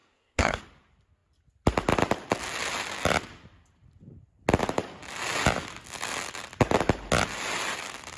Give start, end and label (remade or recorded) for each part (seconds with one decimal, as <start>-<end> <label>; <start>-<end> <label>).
0.0-0.6 remade; 0.6-8.2 recorded